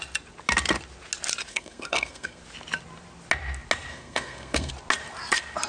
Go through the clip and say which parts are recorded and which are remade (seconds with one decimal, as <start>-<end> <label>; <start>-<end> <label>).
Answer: 0.0-1.5 recorded; 1.5-2.4 remade; 2.4-3.9 recorded; 3.9-4.7 remade; 4.7-5.7 recorded